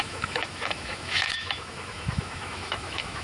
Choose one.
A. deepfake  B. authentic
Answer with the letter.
A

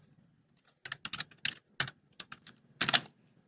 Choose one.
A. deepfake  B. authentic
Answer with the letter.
B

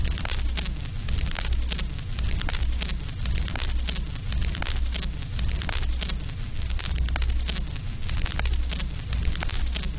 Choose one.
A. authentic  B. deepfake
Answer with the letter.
A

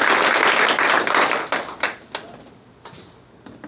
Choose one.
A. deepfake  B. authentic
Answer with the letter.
B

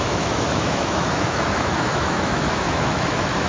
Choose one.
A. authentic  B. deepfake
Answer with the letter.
B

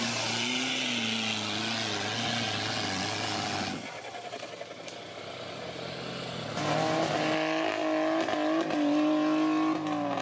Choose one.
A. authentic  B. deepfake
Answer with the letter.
A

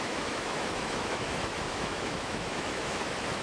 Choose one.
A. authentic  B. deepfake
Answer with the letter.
B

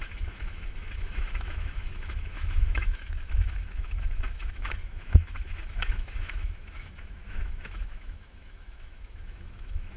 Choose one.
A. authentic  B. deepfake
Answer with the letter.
B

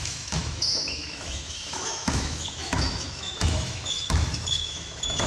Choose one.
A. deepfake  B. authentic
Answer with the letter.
A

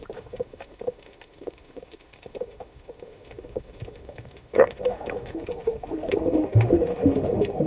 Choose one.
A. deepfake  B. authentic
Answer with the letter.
A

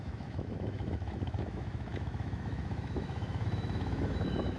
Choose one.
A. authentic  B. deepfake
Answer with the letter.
B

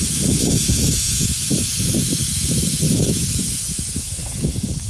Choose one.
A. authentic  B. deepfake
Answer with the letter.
B